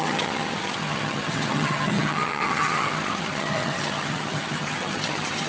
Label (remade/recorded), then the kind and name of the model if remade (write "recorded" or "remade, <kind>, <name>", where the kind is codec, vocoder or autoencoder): remade, vocoder, HiFi-GAN